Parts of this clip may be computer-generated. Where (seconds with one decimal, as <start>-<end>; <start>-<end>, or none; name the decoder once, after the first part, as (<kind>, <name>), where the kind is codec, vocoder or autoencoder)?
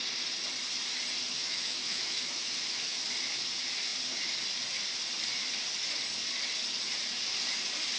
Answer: 1.3-3.0 (autoencoder, DAC-VAE)